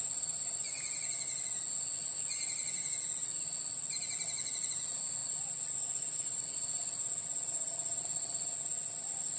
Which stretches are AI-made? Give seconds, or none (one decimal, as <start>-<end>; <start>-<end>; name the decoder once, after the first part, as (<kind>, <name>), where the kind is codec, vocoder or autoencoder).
none